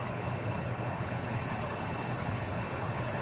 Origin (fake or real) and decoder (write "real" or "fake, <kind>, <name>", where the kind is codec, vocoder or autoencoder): fake, codec, HILCodec